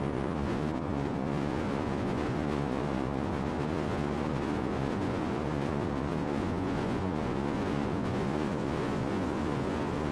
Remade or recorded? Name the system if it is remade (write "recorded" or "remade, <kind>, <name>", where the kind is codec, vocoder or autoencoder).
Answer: remade, vocoder, Vocos